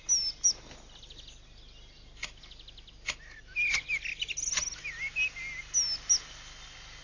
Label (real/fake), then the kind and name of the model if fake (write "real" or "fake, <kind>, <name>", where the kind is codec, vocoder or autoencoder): real